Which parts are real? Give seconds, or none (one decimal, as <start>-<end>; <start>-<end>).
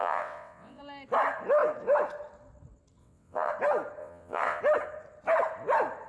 0.8-3.0; 3.5-4.0; 4.6-6.1